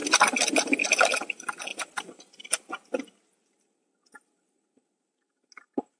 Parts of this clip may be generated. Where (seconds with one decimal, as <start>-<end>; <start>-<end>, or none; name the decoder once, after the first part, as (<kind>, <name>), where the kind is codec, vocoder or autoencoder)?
none